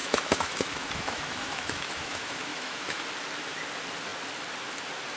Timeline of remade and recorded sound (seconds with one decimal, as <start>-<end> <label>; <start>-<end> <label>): 0.0-3.1 remade; 3.1-5.2 recorded